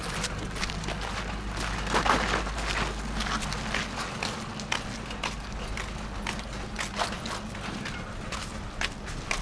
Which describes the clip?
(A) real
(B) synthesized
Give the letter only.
A